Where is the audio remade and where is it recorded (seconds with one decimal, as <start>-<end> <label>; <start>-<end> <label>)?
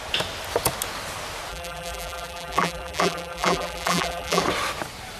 0.0-1.5 recorded; 1.5-4.4 remade; 4.4-5.2 recorded